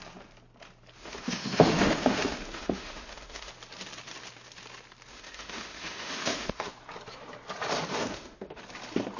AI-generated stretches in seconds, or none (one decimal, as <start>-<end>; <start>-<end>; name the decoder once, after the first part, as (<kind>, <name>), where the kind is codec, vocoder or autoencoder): 1.0-3.5 (autoencoder, DAC-VAE); 5.1-6.7; 7.9-8.6